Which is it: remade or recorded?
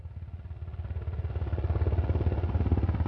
recorded